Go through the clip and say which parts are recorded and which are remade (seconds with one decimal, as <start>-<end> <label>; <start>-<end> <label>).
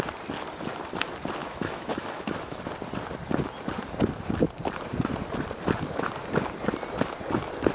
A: 0.0-1.4 recorded; 1.4-2.6 remade; 2.6-7.7 recorded